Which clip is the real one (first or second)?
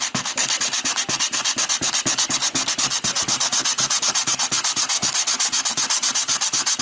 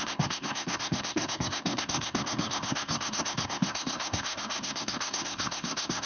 first